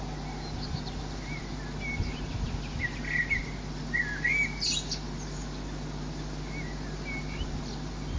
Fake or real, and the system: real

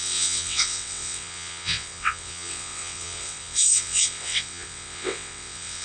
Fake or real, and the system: fake, vocoder, WaveNeXt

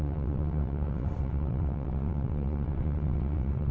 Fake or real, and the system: fake, vocoder, WaveNeXt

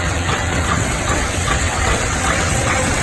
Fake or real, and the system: fake, vocoder, WaveNeXt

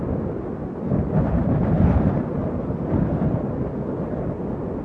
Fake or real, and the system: real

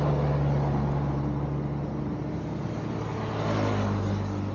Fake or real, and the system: real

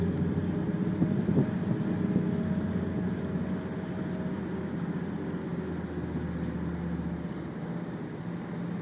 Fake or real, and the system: real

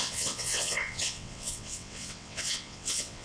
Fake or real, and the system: fake, vocoder, WaveNeXt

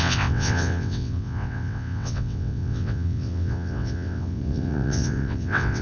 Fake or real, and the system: fake, vocoder, WaveNeXt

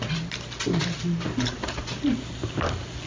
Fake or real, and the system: real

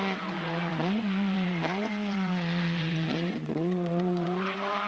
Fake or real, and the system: fake, vocoder, WaveNeXt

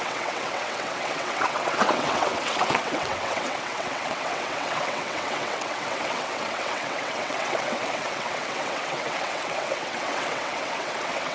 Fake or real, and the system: fake, vocoder, WaveNeXt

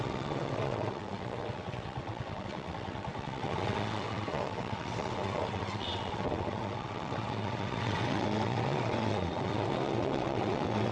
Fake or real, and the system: fake, vocoder, WaveNeXt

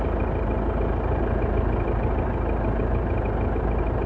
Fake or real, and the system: real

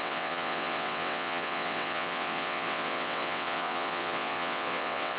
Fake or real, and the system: fake, vocoder, WaveNeXt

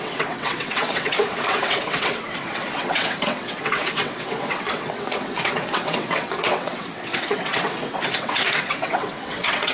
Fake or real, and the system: fake, vocoder, WaveNeXt